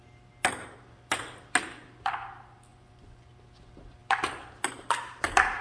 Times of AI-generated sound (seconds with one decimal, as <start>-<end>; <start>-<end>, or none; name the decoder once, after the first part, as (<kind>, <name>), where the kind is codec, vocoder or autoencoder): 2.7-3.3 (vocoder, Vocos)